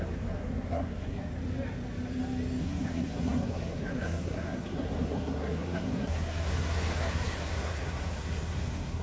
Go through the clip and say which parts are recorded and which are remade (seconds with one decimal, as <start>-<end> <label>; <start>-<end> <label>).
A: 0.0-1.3 remade; 1.3-2.6 recorded; 2.6-9.0 remade